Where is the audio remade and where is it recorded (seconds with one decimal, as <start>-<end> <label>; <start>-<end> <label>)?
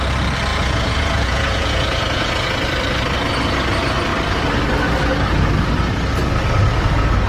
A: 0.0-0.5 recorded; 0.5-2.6 remade; 2.6-7.3 recorded